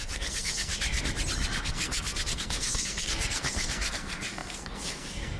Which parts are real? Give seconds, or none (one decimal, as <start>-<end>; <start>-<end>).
0.7-1.6

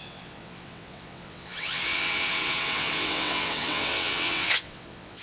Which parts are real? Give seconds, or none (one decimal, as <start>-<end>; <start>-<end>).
none

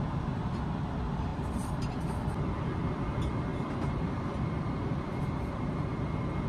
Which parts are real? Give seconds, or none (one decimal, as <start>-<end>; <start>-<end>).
0.0-1.3; 1.9-3.5; 5.2-6.5

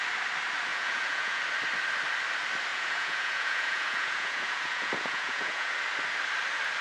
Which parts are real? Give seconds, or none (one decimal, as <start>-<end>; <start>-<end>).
0.0-0.7; 1.4-2.7; 5.7-6.8

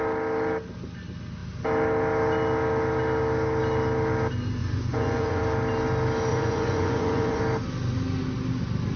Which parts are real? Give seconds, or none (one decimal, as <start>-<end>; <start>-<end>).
0.0-4.6; 5.4-6.3; 7.4-9.0

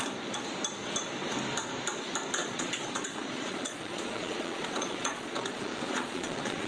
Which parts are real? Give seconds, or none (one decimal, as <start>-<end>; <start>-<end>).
0.0-2.4

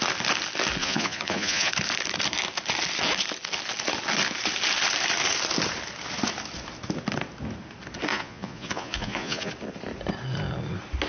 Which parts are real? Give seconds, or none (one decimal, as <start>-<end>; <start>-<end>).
0.0-0.8; 1.7-8.1; 9.5-11.1